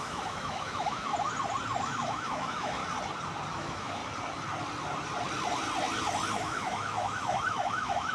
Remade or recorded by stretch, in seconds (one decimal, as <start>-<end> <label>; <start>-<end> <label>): 0.0-1.1 remade; 1.1-1.8 recorded; 1.8-2.8 remade; 2.8-3.5 recorded; 3.5-4.0 remade; 4.0-6.3 recorded; 6.3-8.1 remade